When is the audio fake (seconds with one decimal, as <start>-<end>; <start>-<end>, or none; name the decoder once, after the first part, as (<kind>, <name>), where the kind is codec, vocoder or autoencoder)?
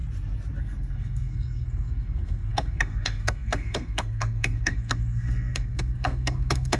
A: 0.6-6.8 (codec, SNAC)